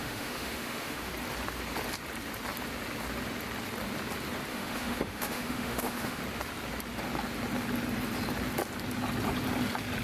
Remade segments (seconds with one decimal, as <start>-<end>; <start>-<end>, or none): 0.0-1.1; 4.5-6.2